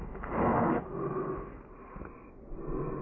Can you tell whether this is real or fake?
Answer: real